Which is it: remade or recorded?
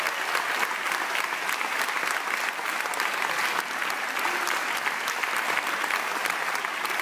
recorded